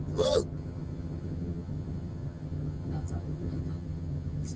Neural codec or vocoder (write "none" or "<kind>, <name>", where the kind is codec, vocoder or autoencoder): vocoder, HiFi-GAN